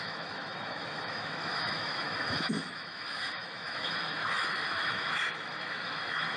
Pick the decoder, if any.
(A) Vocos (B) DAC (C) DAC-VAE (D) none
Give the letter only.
C